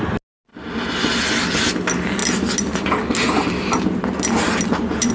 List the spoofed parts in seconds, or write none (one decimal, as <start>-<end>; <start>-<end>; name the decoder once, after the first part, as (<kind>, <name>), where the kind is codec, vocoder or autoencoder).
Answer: none